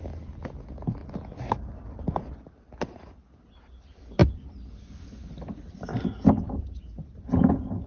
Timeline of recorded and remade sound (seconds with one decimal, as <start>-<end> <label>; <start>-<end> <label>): 0.0-7.9 recorded